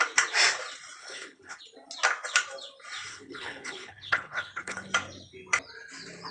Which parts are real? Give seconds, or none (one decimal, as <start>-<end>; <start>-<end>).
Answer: 0.0-1.0; 1.6-3.1; 4.9-6.3